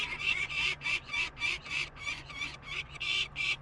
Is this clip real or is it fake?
fake